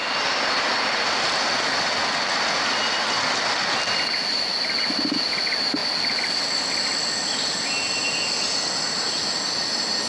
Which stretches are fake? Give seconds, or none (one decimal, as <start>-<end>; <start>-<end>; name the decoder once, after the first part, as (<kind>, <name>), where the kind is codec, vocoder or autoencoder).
none